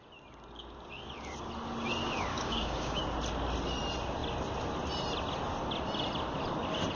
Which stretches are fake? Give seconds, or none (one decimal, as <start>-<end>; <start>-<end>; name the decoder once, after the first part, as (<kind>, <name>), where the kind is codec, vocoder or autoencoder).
2.3-3.0 (codec, DAC)